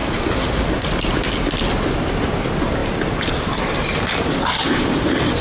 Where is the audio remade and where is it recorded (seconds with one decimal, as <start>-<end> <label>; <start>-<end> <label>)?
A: 0.0-1.2 remade; 1.2-2.8 recorded; 2.8-3.3 remade; 3.3-3.9 recorded; 3.9-5.4 remade